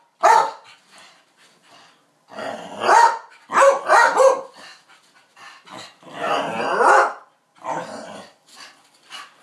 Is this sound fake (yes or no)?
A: no